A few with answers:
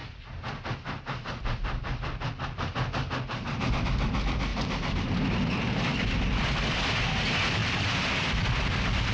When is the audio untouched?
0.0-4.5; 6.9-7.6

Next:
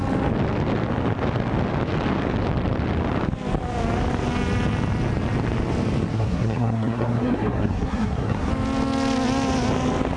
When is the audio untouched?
0.0-6.1; 8.5-10.2

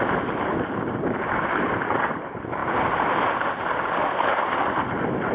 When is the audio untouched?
0.0-5.3

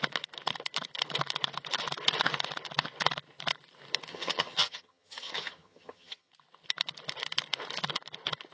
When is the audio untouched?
0.0-4.1; 6.3-8.5

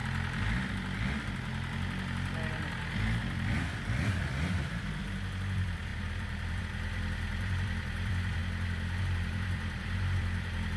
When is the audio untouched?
0.0-5.0; 8.4-9.0

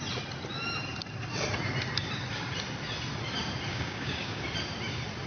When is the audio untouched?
0.0-3.7; 4.4-5.3

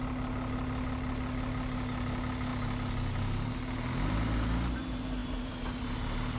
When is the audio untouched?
0.0-6.4

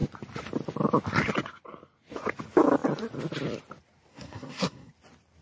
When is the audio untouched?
0.0-4.1; 4.9-5.4